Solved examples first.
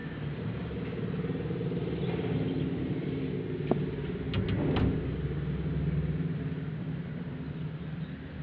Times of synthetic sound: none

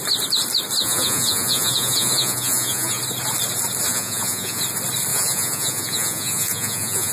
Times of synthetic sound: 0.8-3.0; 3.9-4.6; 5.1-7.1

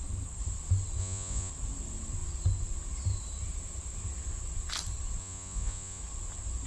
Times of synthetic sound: 1.0-1.5; 5.2-6.0

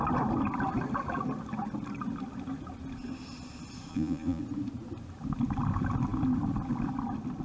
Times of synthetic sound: 3.9-4.4

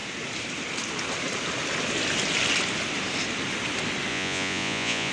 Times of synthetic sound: 4.1-5.1

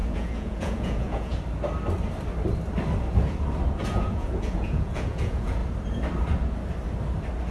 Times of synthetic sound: 0.0-1.3; 3.9-5.6

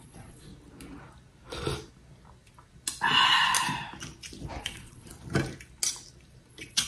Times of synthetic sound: 0.0-0.5; 4.6-5.1; 6.5-6.9

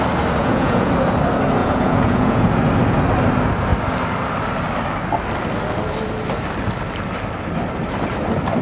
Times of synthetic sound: 0.4-0.9; 1.6-2.5